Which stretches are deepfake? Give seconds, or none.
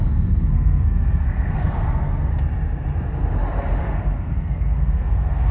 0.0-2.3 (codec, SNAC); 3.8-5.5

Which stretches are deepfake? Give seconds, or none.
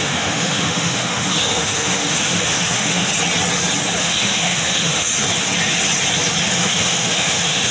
0.0-3.1 (autoencoder, DAC-VAE); 4.0-5.1; 6.4-7.7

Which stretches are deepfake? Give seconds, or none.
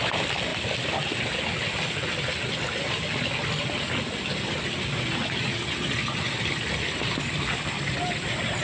none